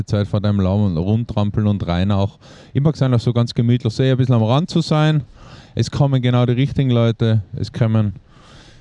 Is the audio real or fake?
real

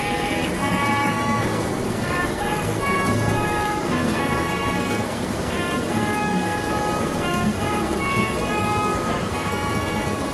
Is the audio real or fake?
fake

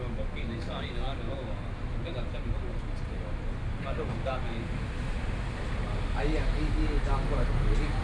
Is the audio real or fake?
real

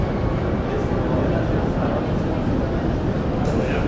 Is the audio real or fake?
real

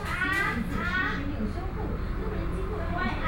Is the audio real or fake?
real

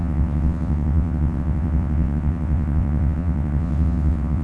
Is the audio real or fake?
fake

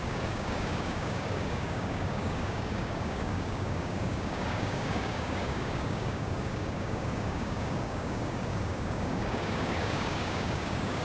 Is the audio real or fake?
fake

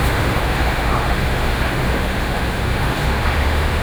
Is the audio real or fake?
fake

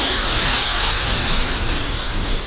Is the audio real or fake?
fake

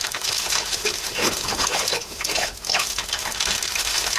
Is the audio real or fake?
fake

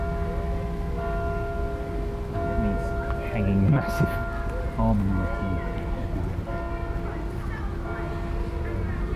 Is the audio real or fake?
real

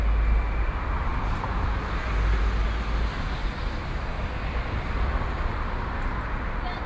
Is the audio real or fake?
real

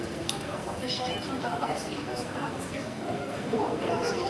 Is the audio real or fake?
fake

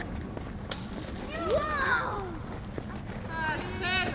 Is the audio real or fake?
real